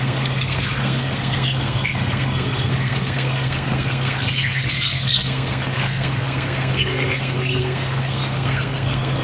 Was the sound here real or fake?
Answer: fake